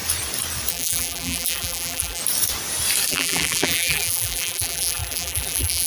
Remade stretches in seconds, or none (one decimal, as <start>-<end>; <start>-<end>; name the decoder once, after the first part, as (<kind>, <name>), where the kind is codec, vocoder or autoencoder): 0.7-2.2 (vocoder, BigVGAN v2); 3.1-5.9